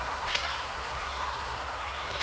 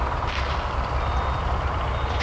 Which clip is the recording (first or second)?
second